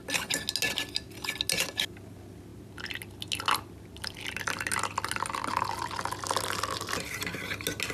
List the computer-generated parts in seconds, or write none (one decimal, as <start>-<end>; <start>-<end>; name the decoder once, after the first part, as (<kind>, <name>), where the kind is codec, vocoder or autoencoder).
none